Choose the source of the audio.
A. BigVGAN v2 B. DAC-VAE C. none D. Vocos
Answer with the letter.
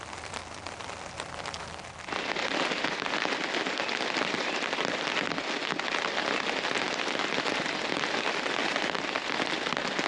C